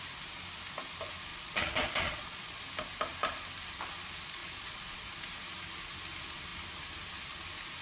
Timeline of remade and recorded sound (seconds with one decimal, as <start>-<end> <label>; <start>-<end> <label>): 0.0-1.3 recorded; 1.3-2.6 remade; 2.6-4.4 recorded; 4.4-5.2 remade; 5.2-7.8 recorded